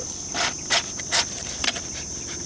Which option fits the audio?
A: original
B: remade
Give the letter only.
A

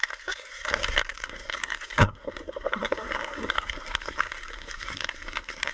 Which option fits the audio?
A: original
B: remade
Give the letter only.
B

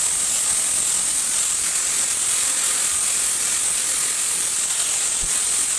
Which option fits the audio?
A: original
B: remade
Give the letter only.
A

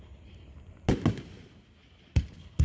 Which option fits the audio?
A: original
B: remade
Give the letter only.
A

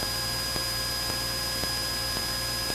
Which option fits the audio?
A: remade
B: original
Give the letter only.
B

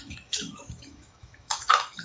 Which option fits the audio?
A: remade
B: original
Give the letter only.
A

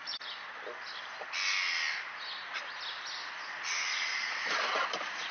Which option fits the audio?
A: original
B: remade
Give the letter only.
A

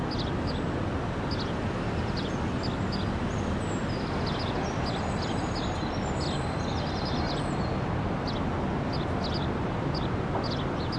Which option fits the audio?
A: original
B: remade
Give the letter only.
A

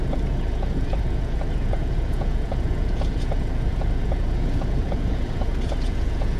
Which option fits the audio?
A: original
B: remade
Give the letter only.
B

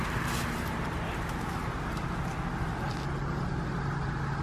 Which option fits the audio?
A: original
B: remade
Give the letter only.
A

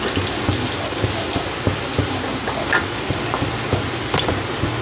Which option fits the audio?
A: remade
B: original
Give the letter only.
B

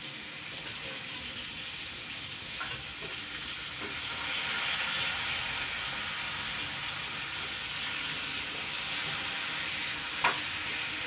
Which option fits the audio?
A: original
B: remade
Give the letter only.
A